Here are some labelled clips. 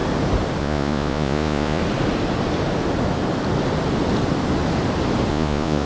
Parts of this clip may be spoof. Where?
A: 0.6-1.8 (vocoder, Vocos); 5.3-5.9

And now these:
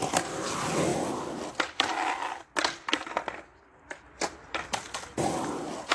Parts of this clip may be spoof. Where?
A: none

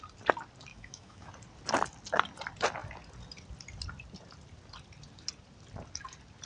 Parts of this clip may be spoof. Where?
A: 0.7-1.3 (autoencoder, DAC-VAE)

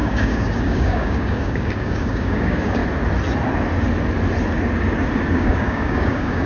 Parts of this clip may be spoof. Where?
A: 0.0-2.8 (codec, DAC); 5.3-6.5

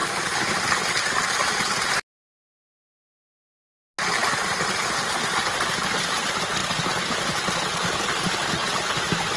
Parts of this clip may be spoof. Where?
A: none

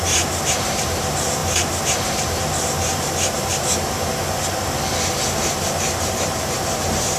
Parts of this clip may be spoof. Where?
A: 0.0-3.5 (vocoder, BigVGAN v2); 6.0-7.2

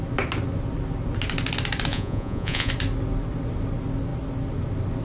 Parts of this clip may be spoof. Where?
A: 1.9-2.7 (vocoder, Vocos)